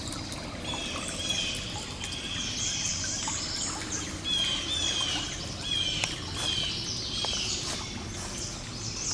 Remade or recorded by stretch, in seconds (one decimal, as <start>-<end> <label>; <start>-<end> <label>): 0.0-9.1 recorded